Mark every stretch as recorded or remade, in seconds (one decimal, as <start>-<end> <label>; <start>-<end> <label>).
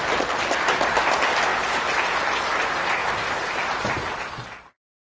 0.0-1.5 recorded; 1.5-2.2 remade; 2.2-3.0 recorded; 3.0-5.2 remade